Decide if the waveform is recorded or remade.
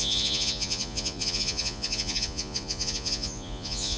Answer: remade